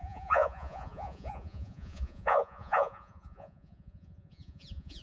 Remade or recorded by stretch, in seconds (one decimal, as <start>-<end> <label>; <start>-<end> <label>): 0.0-5.0 remade